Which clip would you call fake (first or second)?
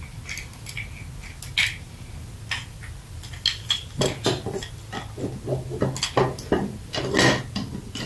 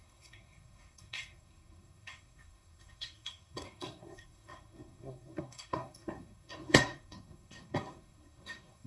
second